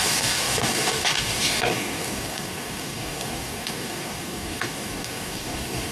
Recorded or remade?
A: remade